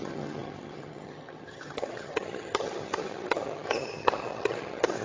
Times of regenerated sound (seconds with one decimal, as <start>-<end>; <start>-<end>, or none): 0.0-5.0